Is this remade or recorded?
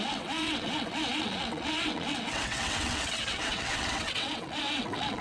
remade